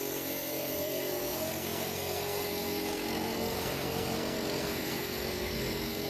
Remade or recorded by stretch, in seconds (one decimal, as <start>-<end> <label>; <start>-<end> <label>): 0.0-6.1 remade